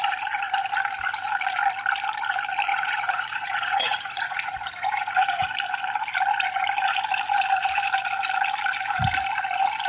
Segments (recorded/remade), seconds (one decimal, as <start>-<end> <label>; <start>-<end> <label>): 0.0-2.7 recorded; 2.7-5.5 remade; 5.5-9.9 recorded